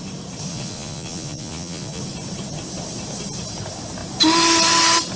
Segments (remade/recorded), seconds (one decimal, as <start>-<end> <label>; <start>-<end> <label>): 0.0-0.5 recorded; 0.5-2.0 remade; 2.0-5.2 recorded

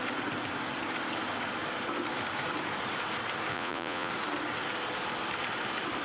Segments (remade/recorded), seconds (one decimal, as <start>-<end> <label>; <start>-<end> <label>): 0.0-3.5 recorded; 3.5-4.1 remade; 4.1-6.0 recorded

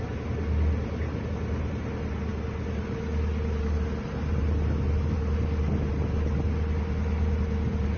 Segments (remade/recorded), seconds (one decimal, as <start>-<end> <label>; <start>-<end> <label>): 0.0-8.0 recorded

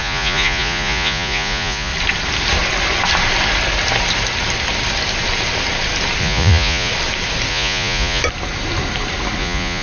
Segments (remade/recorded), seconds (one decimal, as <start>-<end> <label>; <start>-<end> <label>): 0.0-1.9 remade; 1.9-6.2 recorded; 6.2-6.9 remade; 6.9-7.5 recorded; 7.5-8.2 remade; 8.2-9.4 recorded; 9.4-9.8 remade

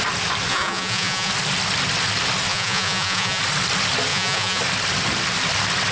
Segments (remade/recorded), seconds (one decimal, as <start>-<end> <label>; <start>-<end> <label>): 0.0-0.5 recorded; 0.5-1.3 remade; 1.3-2.5 recorded; 2.5-3.4 remade; 3.4-4.1 recorded; 4.1-4.6 remade; 4.6-5.9 recorded

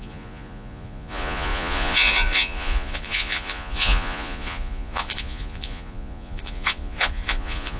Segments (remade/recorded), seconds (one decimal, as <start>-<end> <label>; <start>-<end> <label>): 0.0-7.8 remade

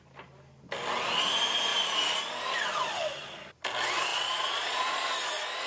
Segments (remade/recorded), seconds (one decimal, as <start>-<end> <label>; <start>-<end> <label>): 0.0-4.1 recorded; 4.1-5.0 remade; 5.0-5.7 recorded